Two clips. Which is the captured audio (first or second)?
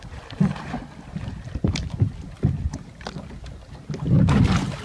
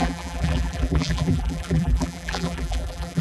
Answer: first